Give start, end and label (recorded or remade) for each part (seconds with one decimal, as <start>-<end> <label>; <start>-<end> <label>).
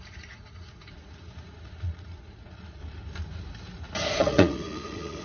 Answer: 0.0-2.8 remade; 2.8-4.2 recorded; 4.2-5.2 remade